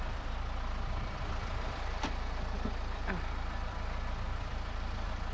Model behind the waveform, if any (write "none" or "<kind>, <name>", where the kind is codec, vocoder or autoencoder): vocoder, BigVGAN v2